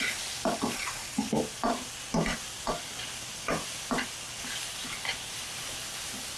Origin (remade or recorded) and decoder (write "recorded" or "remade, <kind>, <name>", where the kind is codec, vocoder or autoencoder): recorded